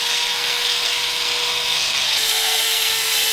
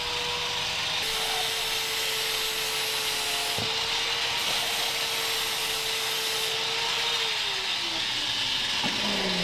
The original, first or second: second